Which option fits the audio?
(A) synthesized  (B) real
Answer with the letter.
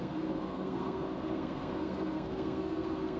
A